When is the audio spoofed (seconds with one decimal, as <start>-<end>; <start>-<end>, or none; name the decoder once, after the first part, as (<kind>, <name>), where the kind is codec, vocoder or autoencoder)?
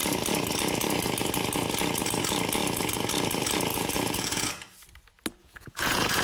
3.7-4.5 (vocoder, Vocos); 5.4-6.2